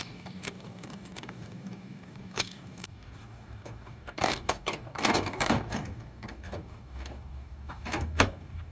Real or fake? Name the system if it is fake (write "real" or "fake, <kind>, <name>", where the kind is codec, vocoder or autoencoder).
fake, codec, DAC